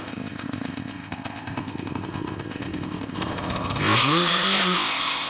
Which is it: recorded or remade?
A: remade